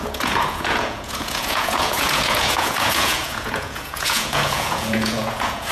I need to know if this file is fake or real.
fake